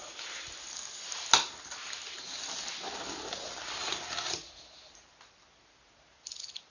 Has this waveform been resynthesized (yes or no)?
no